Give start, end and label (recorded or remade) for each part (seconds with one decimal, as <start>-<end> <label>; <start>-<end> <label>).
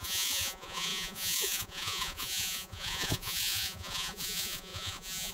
0.0-5.3 remade